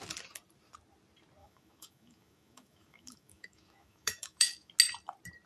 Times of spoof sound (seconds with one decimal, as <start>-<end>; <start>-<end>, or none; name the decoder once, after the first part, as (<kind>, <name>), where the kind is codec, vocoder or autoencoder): 1.4-4.7 (autoencoder, DAC-VAE)